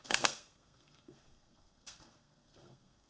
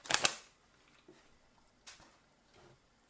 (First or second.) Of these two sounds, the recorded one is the second